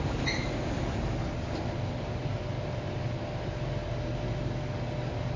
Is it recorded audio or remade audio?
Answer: recorded